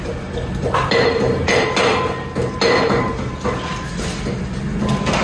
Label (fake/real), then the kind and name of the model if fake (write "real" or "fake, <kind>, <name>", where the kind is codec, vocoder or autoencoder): real